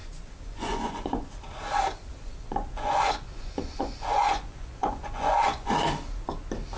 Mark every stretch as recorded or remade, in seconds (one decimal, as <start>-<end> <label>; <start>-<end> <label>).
0.0-1.3 remade; 1.3-2.0 recorded; 2.0-5.7 remade; 5.7-6.8 recorded